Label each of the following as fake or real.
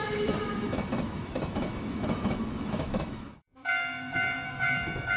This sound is fake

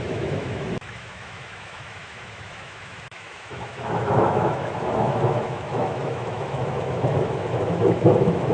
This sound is fake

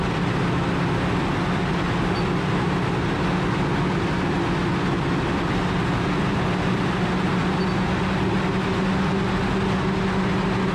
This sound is real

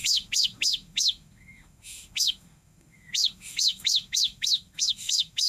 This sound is fake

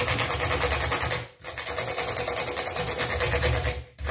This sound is real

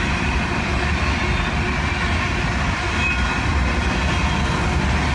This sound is real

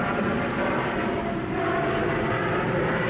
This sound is real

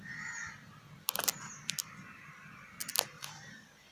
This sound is real